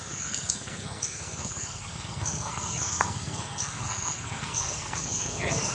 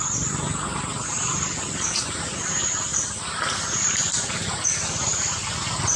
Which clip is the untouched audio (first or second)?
second